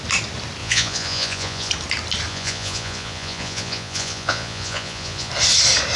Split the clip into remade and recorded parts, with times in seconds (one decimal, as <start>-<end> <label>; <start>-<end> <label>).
0.0-0.6 recorded; 0.6-1.7 remade; 1.7-2.3 recorded; 2.3-5.3 remade; 5.3-6.0 recorded